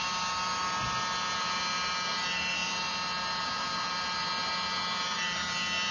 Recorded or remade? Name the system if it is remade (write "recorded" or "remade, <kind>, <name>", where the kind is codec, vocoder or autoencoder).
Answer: recorded